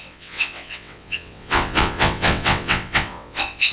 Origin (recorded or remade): remade